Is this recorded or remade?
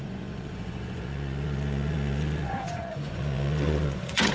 remade